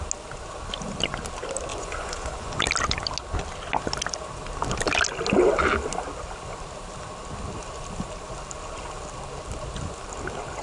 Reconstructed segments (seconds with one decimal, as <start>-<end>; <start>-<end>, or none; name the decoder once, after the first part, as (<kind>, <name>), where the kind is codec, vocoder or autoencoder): 1.7-2.6 (vocoder, Vocos)